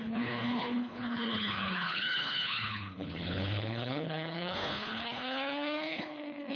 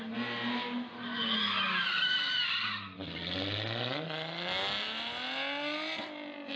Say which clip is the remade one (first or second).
first